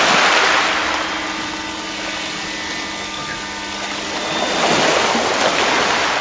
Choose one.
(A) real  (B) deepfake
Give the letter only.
A